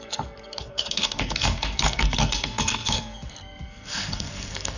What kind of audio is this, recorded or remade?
remade